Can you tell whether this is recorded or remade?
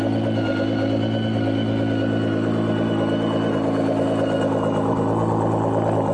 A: recorded